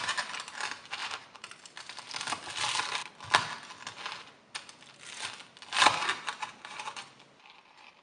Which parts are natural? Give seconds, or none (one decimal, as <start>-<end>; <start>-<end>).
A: 0.0-1.0; 2.1-8.0

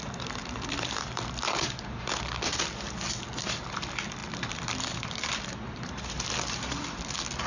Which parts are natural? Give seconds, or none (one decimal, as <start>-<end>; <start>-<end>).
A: 0.0-0.4; 2.7-4.2; 7.0-7.5

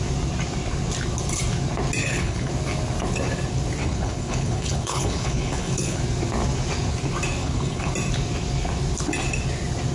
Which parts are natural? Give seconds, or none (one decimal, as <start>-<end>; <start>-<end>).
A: 0.0-2.0; 2.5-3.8; 6.0-7.4; 7.9-9.9